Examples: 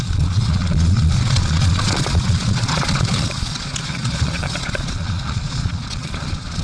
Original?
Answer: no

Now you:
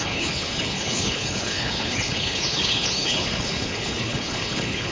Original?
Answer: no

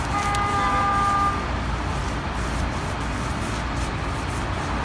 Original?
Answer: yes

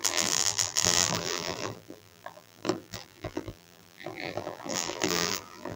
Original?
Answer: no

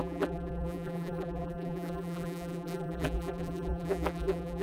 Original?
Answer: no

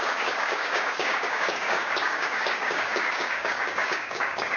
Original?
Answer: no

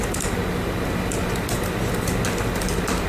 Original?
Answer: yes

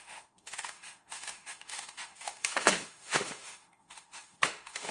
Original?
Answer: no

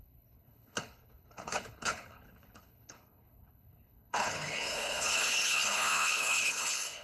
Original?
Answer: no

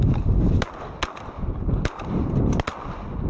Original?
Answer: yes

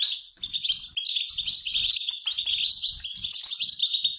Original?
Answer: yes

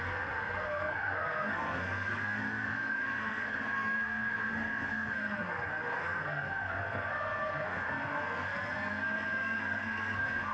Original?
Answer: no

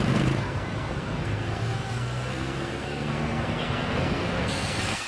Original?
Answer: no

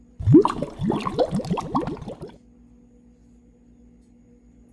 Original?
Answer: yes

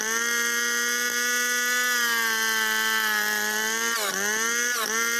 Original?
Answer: yes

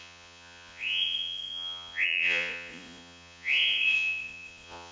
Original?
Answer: no